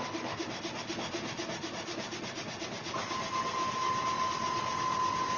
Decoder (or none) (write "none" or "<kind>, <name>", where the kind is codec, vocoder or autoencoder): none